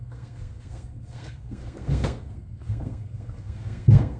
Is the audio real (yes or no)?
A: no